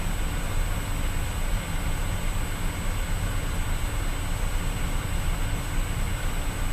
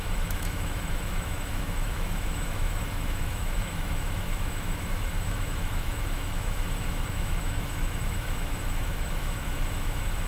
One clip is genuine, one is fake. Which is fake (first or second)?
second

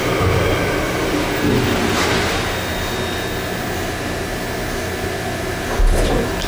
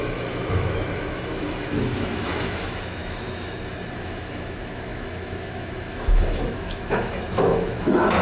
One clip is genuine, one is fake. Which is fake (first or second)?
second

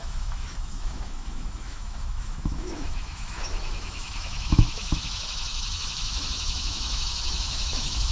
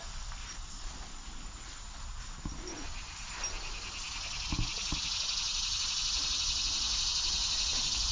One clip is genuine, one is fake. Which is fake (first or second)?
first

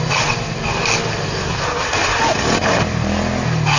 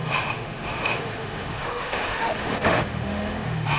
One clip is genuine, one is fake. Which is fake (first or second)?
second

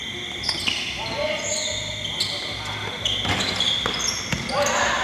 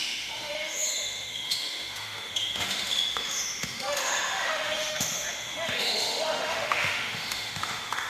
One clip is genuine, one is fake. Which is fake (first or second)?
second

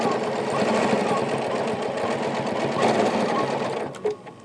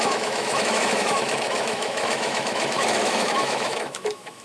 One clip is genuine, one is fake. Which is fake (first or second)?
second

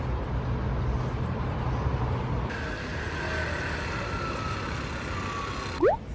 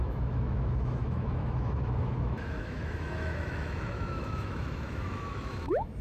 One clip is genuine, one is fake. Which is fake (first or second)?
second